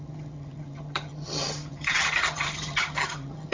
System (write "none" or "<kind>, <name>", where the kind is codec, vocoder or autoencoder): vocoder, HiFi-GAN